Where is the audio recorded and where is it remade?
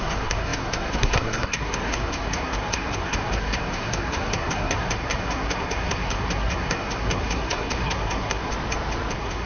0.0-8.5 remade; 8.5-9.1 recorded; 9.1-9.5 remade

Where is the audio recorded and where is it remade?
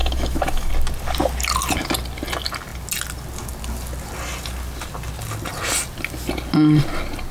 0.0-0.7 remade; 0.7-7.3 recorded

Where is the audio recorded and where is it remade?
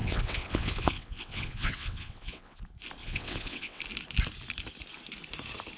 0.0-2.6 remade; 2.6-3.0 recorded; 3.0-3.8 remade; 3.8-5.8 recorded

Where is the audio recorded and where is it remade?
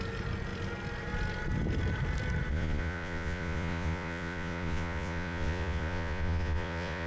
0.0-2.5 recorded; 2.5-7.1 remade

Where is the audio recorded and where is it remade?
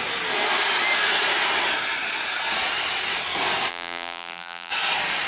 0.0-3.7 recorded; 3.7-4.7 remade; 4.7-5.3 recorded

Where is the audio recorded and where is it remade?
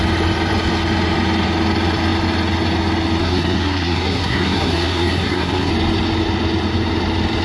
0.0-3.2 recorded; 3.2-5.7 remade; 5.7-7.4 recorded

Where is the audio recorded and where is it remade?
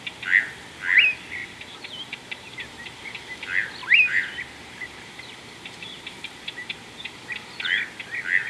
0.0-1.4 recorded; 1.4-2.6 remade; 2.6-3.8 recorded; 3.8-6.9 remade; 6.9-8.5 recorded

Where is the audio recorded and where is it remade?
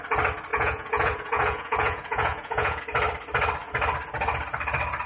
0.0-0.5 recorded; 0.5-2.8 remade; 2.8-5.1 recorded